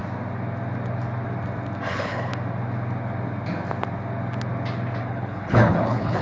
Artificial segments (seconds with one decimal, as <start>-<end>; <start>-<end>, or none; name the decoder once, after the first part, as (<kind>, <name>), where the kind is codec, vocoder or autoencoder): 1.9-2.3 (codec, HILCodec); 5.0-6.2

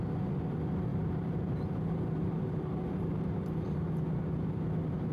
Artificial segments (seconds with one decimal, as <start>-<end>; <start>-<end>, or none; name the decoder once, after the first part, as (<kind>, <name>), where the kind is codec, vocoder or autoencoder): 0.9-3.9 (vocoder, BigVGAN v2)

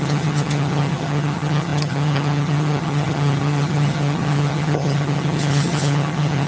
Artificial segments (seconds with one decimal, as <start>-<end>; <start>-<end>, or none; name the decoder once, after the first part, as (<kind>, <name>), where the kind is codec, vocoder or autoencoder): 0.0-6.5 (vocoder, HiFi-GAN)

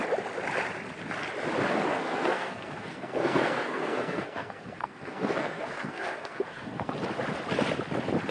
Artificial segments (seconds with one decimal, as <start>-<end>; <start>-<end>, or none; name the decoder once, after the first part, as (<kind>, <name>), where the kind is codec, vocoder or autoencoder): 1.9-6.9 (codec, SNAC)

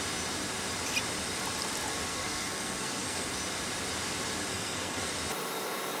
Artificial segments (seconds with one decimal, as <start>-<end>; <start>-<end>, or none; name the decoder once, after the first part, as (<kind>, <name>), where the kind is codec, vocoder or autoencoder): 2.1-3.3 (codec, SNAC); 4.5-5.1

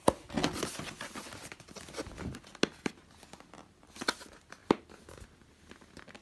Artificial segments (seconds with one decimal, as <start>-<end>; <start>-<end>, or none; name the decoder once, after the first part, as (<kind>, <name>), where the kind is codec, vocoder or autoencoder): none